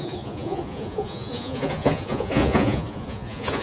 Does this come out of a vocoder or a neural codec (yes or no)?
yes